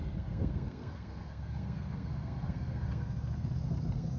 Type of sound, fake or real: fake